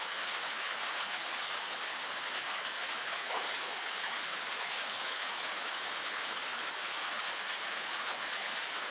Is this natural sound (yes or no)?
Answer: no